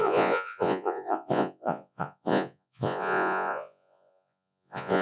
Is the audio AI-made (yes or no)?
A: yes